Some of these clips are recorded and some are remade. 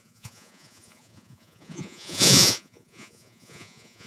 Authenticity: remade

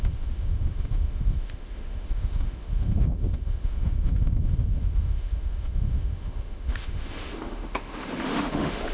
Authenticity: remade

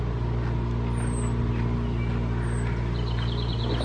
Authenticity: recorded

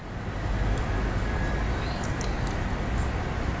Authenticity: recorded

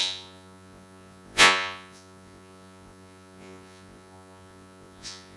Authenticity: remade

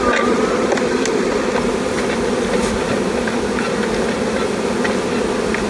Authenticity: recorded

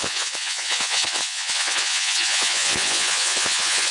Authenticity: remade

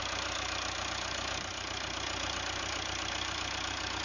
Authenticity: remade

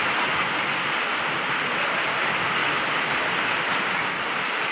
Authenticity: recorded